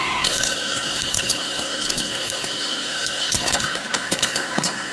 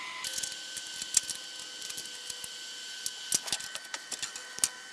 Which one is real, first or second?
second